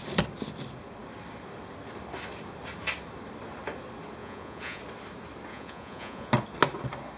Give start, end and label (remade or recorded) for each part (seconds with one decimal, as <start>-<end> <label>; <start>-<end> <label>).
0.0-4.2 recorded; 4.2-4.8 remade; 4.8-5.5 recorded; 5.5-6.3 remade; 6.3-7.2 recorded

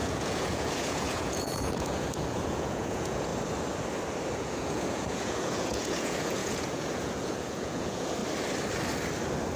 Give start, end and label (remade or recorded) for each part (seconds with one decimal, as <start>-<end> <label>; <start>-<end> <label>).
0.0-3.3 remade; 3.3-4.3 recorded; 4.3-8.2 remade; 8.2-9.6 recorded

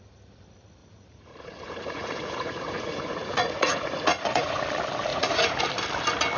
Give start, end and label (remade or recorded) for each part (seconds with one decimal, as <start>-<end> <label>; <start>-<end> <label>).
0.0-0.8 recorded; 0.8-4.6 remade; 4.6-5.1 recorded; 5.1-5.6 remade; 5.6-6.4 recorded

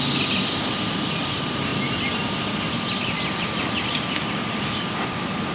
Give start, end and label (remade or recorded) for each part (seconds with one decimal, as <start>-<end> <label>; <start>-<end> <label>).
0.0-5.5 recorded